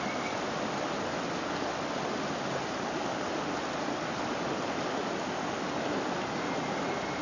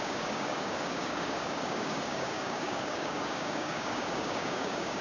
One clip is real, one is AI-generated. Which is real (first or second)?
first